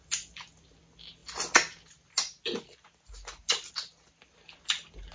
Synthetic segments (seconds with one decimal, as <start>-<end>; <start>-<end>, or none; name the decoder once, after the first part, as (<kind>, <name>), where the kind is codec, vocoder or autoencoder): none